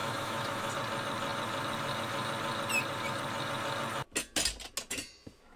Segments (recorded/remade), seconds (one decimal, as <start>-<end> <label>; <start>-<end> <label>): 0.0-0.7 remade; 0.7-5.6 recorded